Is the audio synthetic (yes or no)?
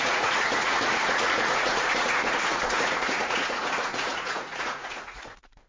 yes